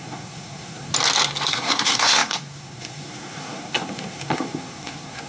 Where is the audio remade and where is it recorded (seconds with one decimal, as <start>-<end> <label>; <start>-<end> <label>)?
0.0-0.9 remade; 0.9-1.5 recorded; 1.5-5.3 remade